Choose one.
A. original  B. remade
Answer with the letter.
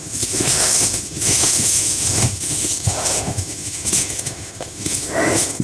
B